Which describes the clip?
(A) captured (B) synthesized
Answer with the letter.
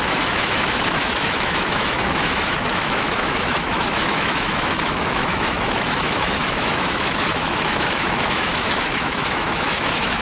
B